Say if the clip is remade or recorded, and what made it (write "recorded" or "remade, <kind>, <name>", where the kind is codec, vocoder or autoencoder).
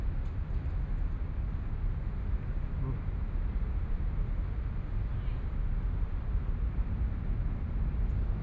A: recorded